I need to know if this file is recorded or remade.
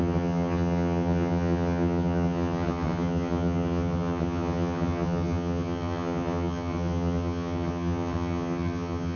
remade